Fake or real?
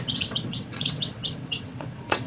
fake